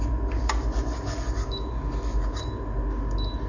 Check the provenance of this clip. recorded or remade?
recorded